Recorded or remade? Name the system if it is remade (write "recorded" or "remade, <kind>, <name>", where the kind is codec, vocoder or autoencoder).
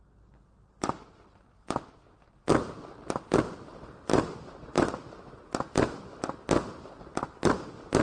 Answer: recorded